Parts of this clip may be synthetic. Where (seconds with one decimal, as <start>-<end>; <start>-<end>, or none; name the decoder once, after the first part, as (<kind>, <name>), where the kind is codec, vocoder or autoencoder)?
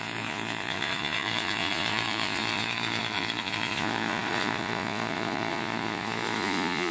0.0-6.9 (vocoder, Vocos)